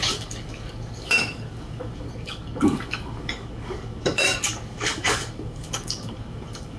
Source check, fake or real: fake